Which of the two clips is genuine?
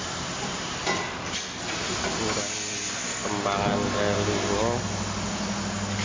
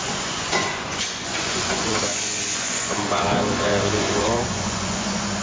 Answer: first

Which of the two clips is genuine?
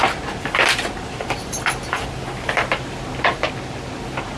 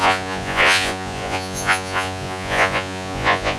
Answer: first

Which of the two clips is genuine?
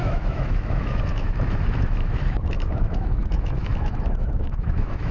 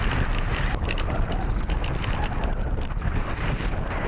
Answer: second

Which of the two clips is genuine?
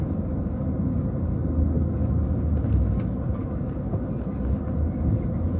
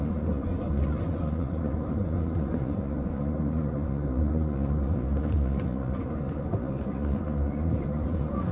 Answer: first